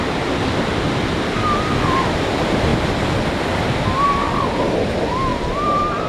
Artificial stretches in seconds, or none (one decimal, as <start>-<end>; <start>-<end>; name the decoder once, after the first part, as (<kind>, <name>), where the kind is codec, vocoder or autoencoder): 2.7-3.9 (vocoder, BigVGAN v2); 5.3-6.1